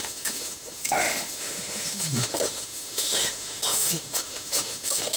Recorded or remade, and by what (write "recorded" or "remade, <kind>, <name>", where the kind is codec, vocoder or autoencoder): remade, autoencoder, DAC-VAE